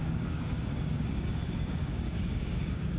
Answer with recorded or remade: remade